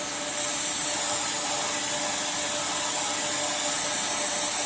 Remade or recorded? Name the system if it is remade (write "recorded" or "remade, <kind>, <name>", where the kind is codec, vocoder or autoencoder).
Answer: recorded